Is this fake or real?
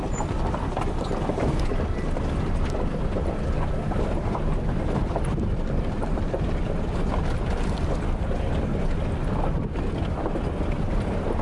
real